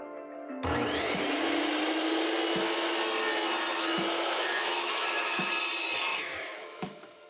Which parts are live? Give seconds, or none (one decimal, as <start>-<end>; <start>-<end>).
0.0-3.7; 5.5-6.1